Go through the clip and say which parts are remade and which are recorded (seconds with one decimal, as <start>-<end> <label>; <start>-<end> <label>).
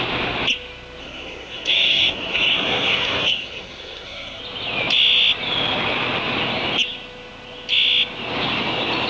0.0-1.0 recorded; 1.0-4.4 remade; 4.4-9.1 recorded